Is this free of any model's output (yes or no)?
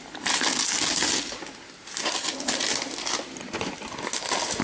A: yes